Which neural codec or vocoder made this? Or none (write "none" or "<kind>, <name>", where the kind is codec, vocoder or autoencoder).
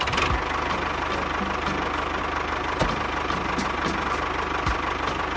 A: none